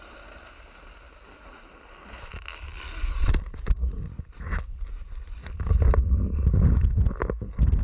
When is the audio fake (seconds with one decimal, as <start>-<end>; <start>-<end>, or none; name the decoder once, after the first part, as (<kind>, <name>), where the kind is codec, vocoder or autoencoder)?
none